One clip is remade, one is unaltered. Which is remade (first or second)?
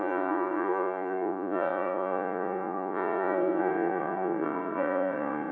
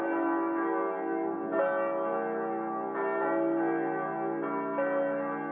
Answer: first